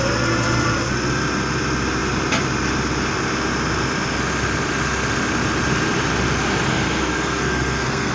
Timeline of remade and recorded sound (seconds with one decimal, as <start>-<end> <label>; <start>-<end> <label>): 0.0-6.7 recorded; 6.7-8.1 remade